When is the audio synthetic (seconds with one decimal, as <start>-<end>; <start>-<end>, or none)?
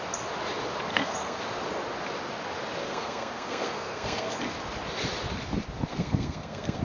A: 0.9-1.4; 2.8-4.4; 5.9-6.8